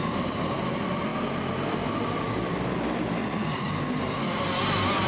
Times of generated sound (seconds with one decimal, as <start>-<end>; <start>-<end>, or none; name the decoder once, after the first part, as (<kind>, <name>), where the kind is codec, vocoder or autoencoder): 3.2-3.7 (vocoder, Vocos)